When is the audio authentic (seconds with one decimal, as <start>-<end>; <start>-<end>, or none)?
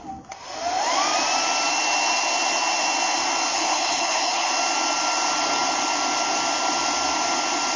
0.0-3.5; 4.5-7.8